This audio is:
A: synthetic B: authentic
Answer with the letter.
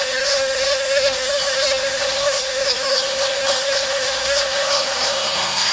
A